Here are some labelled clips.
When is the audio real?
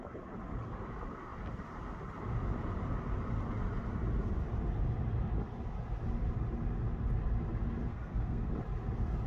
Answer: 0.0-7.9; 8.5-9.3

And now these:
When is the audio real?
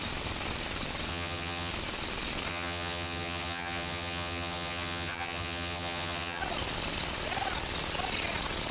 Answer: 0.0-1.1; 1.7-2.5; 6.4-8.7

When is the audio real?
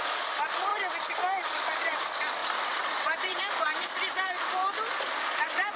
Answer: 4.6-5.2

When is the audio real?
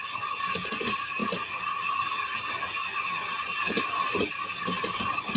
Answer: 0.0-5.4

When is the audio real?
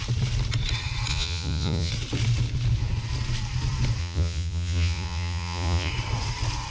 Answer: 0.0-1.1; 1.9-4.0; 5.9-6.7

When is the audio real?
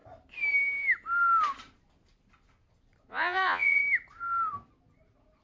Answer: 0.0-3.1; 3.8-5.4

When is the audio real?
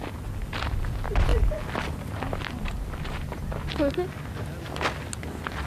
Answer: 0.0-5.7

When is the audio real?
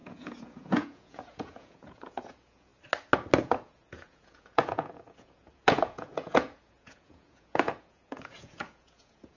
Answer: 2.7-3.4